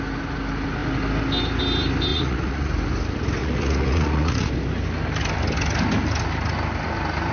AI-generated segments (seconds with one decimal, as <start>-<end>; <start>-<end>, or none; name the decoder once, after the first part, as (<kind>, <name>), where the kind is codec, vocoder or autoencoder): 2.1-2.7 (vocoder, Vocos); 3.4-4.5